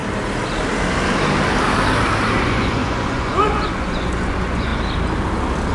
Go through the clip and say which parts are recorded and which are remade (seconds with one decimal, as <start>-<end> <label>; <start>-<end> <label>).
0.0-2.4 recorded; 2.4-4.7 remade; 4.7-5.7 recorded